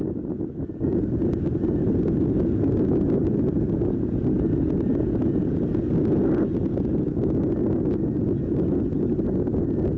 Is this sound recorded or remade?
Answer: recorded